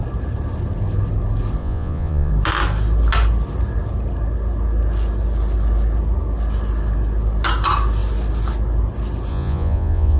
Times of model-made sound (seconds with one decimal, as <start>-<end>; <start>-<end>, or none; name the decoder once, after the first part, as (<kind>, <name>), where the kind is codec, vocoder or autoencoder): 1.6-2.3 (vocoder, Vocos); 9.3-10.2

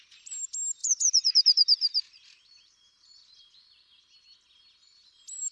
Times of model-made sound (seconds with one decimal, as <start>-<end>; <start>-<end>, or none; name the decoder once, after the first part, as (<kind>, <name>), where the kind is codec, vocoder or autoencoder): 0.8-3.6 (vocoder, BigVGAN v2)

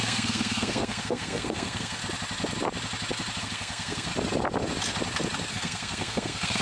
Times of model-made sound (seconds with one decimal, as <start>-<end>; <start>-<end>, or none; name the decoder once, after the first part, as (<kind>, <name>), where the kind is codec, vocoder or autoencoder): 0.0-2.0 (codec, SNAC); 3.4-4.1; 5.5-6.6